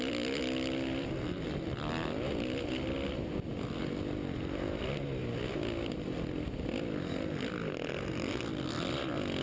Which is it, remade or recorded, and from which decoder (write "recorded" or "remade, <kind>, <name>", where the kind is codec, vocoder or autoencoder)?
recorded